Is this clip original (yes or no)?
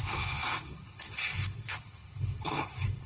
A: no